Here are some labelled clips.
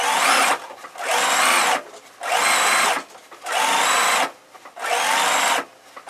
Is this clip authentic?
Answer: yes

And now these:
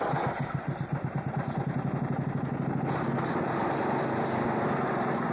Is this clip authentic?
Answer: yes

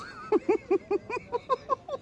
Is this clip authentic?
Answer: yes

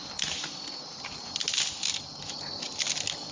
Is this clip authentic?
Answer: yes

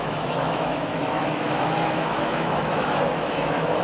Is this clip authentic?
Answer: no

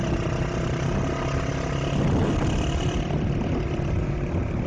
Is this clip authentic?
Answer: yes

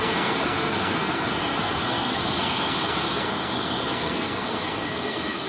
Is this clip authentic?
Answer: no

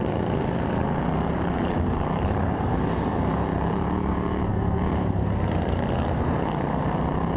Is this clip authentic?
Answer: no